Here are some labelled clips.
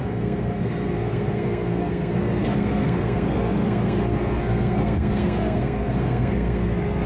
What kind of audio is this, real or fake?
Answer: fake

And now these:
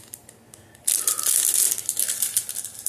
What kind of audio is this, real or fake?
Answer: real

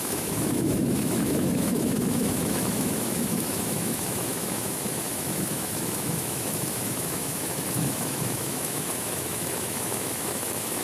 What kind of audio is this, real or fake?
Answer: fake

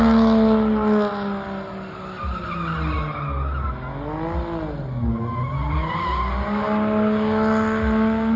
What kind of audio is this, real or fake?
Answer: real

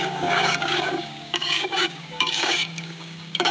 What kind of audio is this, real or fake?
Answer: fake